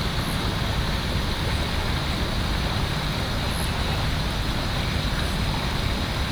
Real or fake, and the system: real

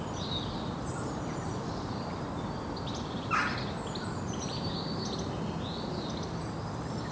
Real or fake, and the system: real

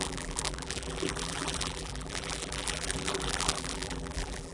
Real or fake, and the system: fake, vocoder, BigVGAN v2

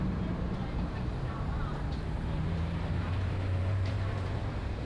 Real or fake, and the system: fake, vocoder, BigVGAN v2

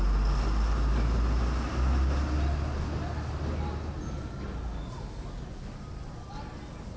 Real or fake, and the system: real